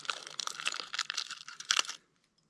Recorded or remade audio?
recorded